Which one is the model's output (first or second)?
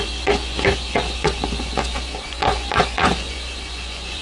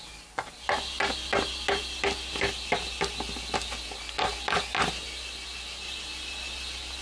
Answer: first